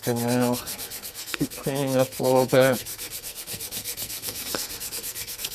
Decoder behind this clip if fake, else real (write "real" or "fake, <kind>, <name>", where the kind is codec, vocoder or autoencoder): fake, codec, SNAC